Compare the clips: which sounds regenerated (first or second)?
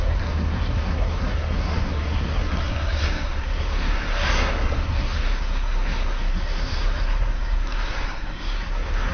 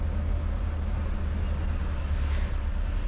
first